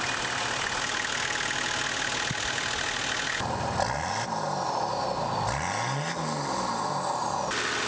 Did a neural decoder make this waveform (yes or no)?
no